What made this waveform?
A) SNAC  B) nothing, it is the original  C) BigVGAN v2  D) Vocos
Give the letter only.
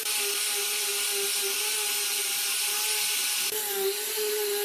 B